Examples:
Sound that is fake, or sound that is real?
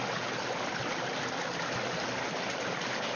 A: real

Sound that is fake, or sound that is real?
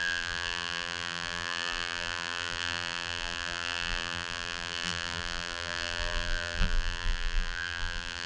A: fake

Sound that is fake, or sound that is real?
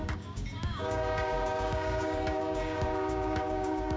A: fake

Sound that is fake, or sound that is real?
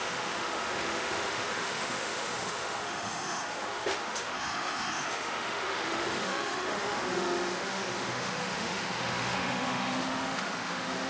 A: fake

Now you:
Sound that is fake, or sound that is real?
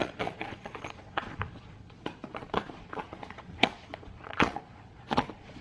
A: fake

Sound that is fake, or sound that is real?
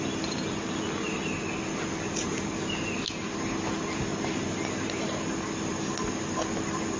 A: real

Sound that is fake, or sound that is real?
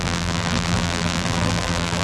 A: fake